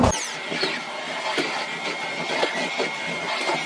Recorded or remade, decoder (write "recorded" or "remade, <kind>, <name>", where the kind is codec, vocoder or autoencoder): recorded